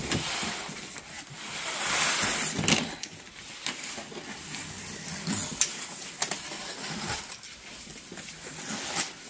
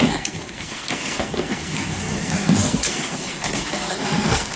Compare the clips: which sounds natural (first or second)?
first